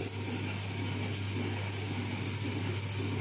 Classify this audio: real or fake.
real